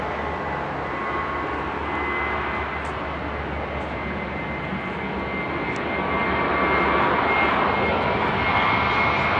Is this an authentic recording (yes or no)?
yes